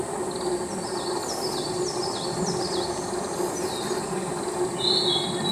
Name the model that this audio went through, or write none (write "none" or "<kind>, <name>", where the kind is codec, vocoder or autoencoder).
none